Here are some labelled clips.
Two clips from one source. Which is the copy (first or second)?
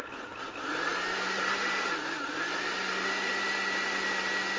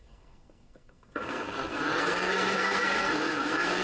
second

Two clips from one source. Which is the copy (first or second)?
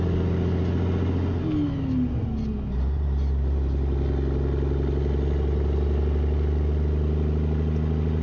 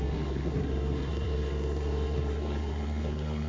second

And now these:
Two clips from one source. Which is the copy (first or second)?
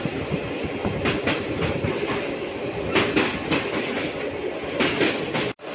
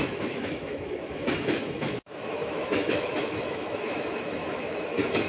second